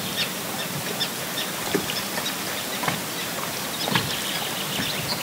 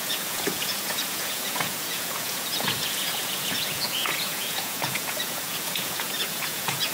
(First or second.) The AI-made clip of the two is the second